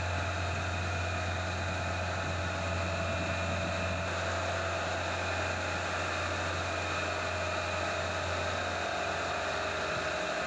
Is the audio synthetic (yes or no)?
no